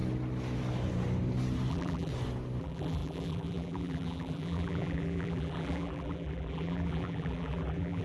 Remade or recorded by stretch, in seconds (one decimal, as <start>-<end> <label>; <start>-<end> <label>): 0.0-1.7 recorded; 1.7-2.1 remade; 2.1-2.6 recorded; 2.6-8.0 remade